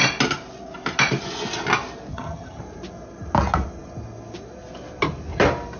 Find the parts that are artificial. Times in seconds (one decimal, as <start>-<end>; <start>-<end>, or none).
2.1-2.6